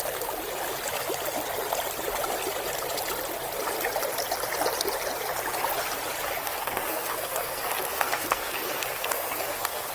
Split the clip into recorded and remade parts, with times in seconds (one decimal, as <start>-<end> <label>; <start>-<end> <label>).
0.0-6.4 recorded; 6.4-9.9 remade